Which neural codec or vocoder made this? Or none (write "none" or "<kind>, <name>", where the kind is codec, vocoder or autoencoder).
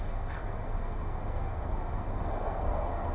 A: codec, SNAC